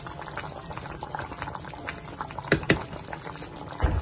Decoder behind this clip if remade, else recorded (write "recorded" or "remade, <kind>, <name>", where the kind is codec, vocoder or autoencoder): recorded